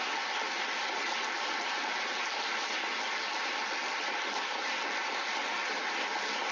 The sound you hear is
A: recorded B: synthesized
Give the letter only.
A